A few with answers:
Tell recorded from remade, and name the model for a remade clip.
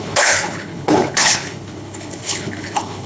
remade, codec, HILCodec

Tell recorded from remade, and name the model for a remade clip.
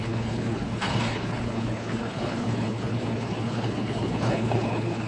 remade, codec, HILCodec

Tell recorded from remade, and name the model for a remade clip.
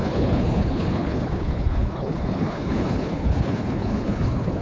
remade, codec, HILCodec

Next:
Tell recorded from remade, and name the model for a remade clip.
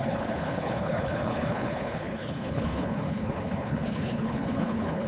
remade, codec, HILCodec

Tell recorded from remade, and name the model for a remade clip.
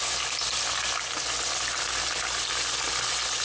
recorded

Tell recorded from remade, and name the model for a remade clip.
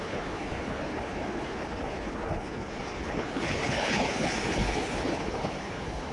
remade, codec, HILCodec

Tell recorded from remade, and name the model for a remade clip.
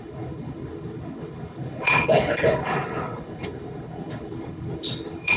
remade, codec, HILCodec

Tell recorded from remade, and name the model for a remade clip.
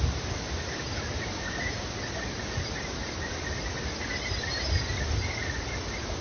recorded